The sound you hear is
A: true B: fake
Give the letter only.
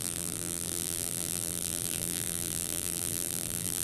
B